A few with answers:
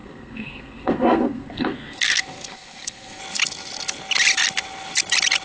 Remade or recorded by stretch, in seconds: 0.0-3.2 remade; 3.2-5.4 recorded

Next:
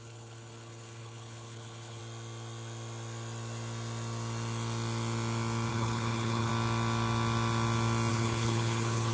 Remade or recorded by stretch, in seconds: 0.0-2.0 remade; 2.0-5.7 recorded; 5.7-6.5 remade; 6.5-8.1 recorded; 8.1-9.1 remade

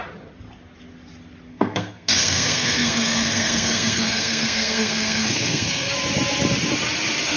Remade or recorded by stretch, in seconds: 0.0-1.5 recorded; 1.5-5.9 remade; 5.9-7.4 recorded

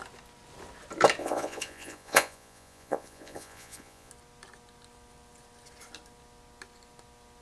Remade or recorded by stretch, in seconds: 0.0-1.2 recorded; 1.2-4.1 remade; 4.1-7.4 recorded

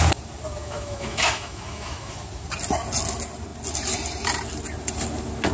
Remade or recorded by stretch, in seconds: 0.0-0.6 recorded; 0.6-2.1 remade; 2.1-5.5 recorded

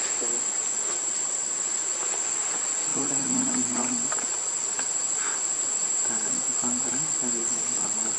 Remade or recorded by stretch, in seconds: 0.0-2.9 recorded; 2.9-4.1 remade; 4.1-8.2 recorded

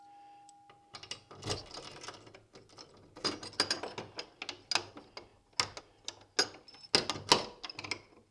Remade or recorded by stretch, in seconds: 0.0-8.3 recorded

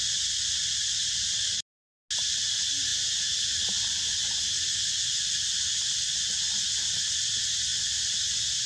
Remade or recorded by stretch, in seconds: 0.0-8.7 recorded